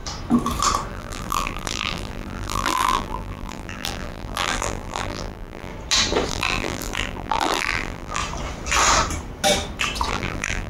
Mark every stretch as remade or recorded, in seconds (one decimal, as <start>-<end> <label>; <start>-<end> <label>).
0.0-0.9 recorded; 0.9-5.7 remade; 5.7-6.3 recorded; 6.3-8.2 remade; 8.2-10.1 recorded; 10.1-10.7 remade